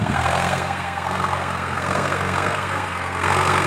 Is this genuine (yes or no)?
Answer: no